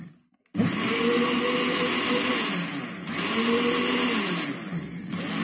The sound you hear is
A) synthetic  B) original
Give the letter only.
B